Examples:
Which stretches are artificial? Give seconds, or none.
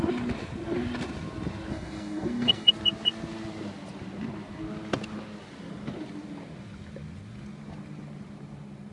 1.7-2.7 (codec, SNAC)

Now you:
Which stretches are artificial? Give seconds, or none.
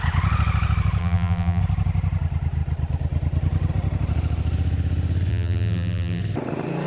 1.0-1.6 (vocoder, BigVGAN v2); 5.3-6.2